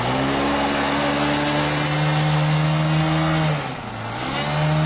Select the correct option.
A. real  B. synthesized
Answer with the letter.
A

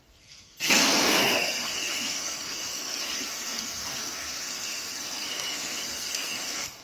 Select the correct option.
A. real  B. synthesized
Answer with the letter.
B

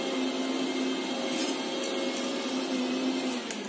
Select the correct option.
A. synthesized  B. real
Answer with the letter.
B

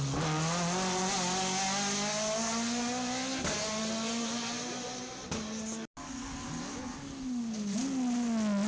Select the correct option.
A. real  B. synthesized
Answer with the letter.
A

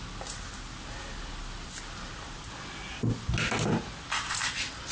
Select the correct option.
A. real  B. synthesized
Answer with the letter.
A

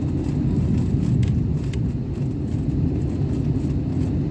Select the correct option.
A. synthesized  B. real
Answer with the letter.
B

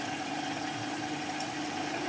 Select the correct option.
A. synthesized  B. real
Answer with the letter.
B